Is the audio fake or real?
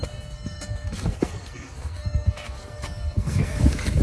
fake